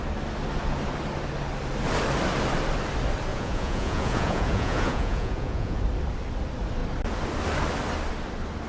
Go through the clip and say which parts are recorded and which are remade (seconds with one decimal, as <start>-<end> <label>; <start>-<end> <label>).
0.0-3.3 recorded; 3.3-5.8 remade; 5.8-8.7 recorded